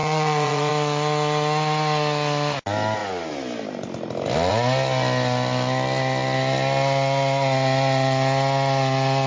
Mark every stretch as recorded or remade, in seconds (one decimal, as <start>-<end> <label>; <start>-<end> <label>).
0.0-0.7 remade; 0.7-9.3 recorded